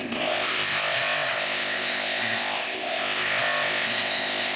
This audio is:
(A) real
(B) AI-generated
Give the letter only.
B